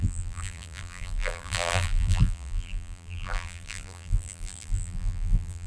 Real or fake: fake